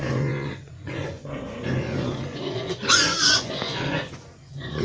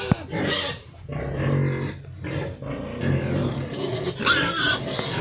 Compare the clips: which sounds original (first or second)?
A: second